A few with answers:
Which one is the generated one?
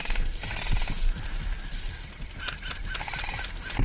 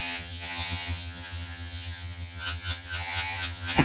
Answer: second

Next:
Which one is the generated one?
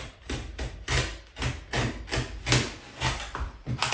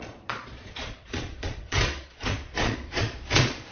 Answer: second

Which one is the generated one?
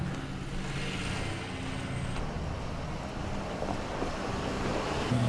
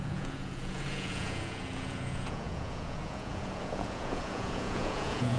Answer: second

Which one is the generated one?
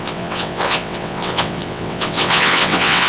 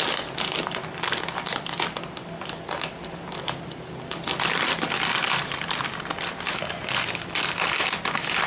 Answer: first